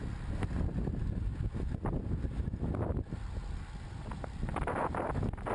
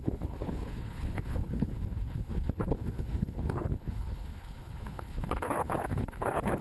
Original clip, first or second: first